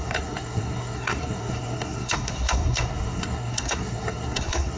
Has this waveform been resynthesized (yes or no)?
yes